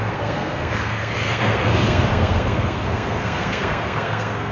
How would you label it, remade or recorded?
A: remade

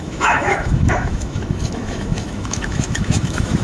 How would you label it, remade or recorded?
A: remade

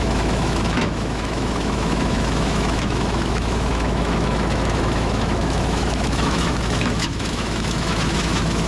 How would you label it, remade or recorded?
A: remade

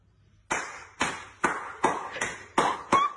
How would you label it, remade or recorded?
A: recorded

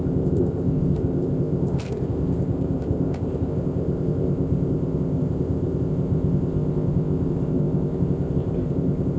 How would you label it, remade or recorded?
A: remade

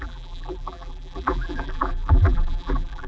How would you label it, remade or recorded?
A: remade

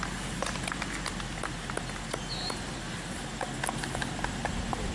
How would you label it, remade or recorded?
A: recorded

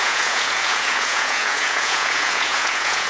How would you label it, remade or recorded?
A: remade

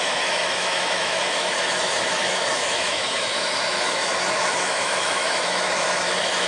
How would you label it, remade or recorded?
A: remade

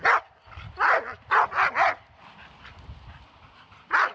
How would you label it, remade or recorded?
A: recorded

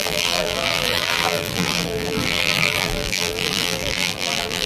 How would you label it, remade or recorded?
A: remade